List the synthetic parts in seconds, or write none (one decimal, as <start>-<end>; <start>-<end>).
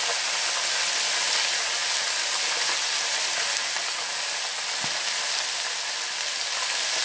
none